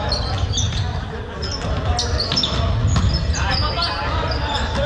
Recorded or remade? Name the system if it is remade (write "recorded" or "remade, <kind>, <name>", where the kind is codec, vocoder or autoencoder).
recorded